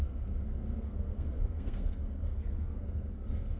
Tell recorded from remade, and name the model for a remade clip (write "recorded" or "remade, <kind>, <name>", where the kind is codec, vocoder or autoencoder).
remade, codec, SNAC